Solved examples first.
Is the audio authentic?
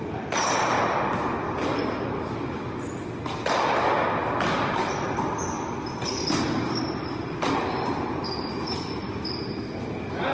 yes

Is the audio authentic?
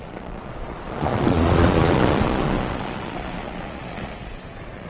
no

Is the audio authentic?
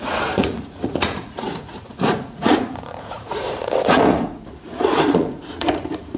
no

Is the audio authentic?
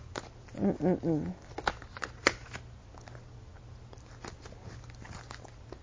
yes